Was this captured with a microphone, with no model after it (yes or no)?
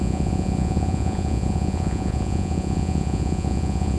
no